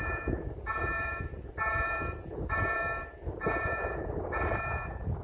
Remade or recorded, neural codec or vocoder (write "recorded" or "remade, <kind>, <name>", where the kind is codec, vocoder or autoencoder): remade, vocoder, BigVGAN v2